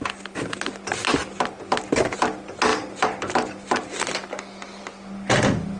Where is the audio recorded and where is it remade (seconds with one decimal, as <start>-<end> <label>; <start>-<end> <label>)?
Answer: 0.0-2.7 recorded; 2.7-4.8 remade; 4.8-5.8 recorded